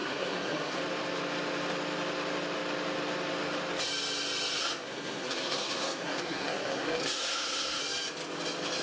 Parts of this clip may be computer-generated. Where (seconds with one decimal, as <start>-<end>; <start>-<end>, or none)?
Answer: 0.0-0.8; 4.6-7.8

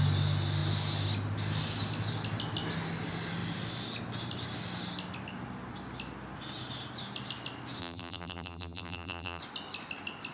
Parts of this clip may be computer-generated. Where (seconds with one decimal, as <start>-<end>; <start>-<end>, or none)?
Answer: 7.8-9.4